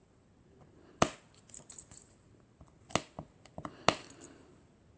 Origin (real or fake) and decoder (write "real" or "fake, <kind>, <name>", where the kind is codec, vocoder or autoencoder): real